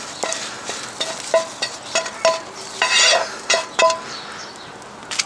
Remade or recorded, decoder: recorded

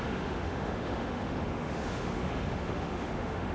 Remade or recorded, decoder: remade, autoencoder, DAC-VAE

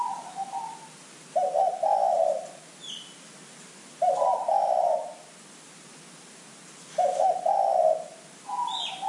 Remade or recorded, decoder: recorded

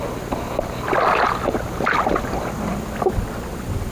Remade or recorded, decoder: recorded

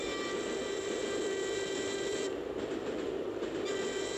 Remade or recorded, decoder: recorded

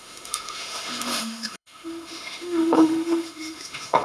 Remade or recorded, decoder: remade, autoencoder, DAC-VAE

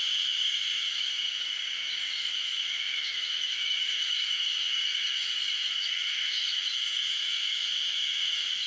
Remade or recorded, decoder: remade, autoencoder, DAC-VAE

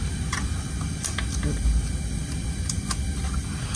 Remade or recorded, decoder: recorded